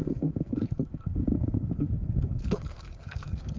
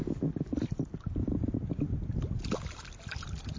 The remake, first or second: first